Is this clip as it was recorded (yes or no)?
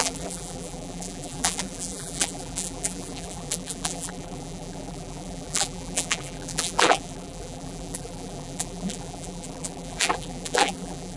no